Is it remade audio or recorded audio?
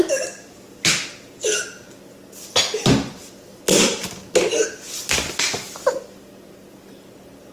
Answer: recorded